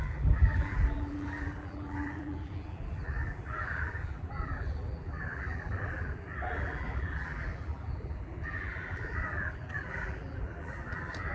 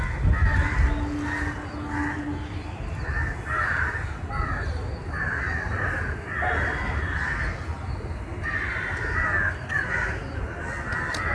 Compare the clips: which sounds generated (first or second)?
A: first